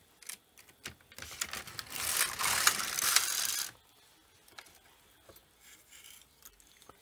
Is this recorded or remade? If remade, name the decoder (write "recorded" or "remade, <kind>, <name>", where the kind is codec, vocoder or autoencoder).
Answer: recorded